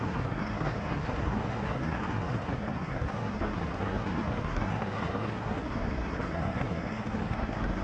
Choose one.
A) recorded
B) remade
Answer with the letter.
B